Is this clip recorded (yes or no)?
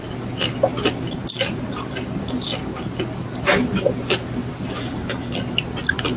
yes